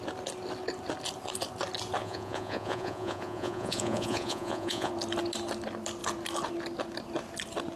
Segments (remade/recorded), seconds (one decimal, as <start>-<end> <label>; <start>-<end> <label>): 0.0-2.0 recorded; 2.0-4.9 remade; 4.9-7.8 recorded